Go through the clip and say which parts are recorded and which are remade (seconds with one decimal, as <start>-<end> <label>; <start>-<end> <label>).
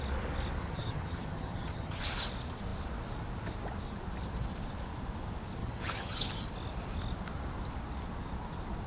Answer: 0.0-0.6 recorded; 0.6-2.0 remade; 2.0-5.6 recorded; 5.6-6.3 remade; 6.3-8.9 recorded